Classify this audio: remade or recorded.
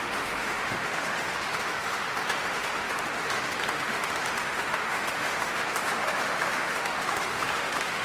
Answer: remade